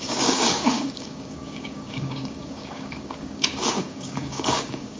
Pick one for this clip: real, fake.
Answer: fake